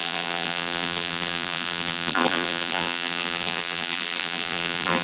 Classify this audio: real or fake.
fake